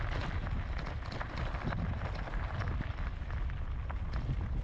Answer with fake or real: real